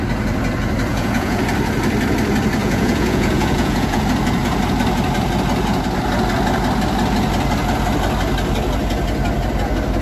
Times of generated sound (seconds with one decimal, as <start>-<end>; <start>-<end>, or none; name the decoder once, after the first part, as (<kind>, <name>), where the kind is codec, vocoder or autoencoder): 0.9-1.4 (vocoder, Vocos); 2.6-4.0